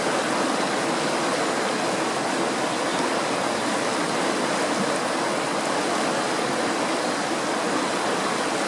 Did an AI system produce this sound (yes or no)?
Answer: no